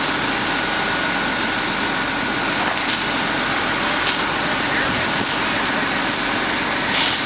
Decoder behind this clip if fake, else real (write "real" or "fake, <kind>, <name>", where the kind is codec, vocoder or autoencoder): real